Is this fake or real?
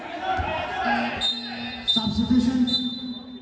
real